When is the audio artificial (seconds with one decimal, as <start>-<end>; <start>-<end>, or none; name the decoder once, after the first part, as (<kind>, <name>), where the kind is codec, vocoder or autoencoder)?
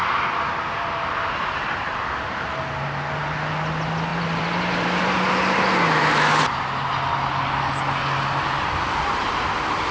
4.1-5.3 (vocoder, BigVGAN v2)